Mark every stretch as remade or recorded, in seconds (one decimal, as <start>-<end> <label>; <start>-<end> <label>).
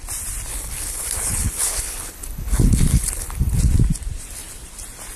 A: 0.0-0.5 recorded; 0.5-3.6 remade; 3.6-5.2 recorded